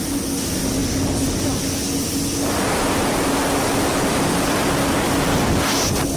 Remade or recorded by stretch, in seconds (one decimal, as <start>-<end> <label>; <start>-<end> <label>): 0.0-6.2 recorded